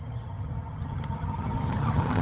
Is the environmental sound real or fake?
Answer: fake